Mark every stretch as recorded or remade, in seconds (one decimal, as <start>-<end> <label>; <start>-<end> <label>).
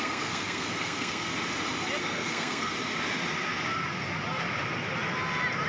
0.0-1.3 remade; 1.3-2.0 recorded; 2.0-2.7 remade; 2.7-5.7 recorded